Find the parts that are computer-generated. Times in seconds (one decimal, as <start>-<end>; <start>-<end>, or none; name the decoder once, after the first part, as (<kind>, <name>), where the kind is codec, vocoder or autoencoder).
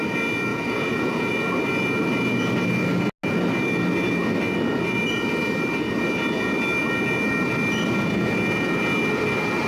0.5-1.3 (vocoder, Vocos)